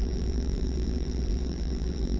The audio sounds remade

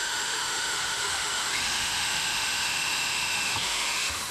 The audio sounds remade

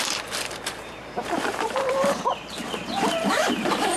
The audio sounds remade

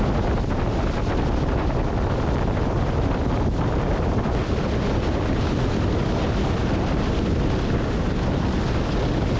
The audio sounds recorded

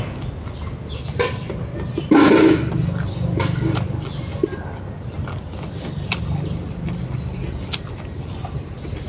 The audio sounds recorded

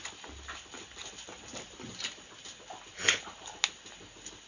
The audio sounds recorded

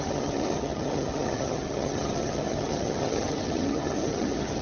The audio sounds remade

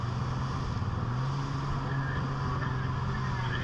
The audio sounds recorded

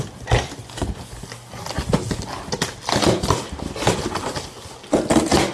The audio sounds recorded